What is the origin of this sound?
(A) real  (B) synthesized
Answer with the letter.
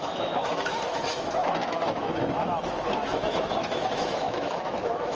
B